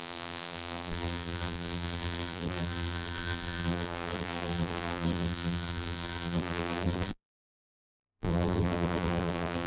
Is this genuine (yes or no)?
no